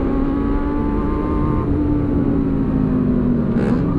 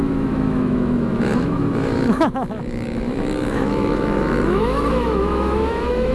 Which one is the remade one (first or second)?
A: second